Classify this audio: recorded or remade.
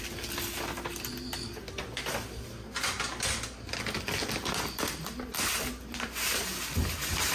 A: recorded